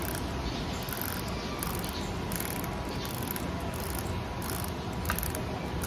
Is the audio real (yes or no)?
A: yes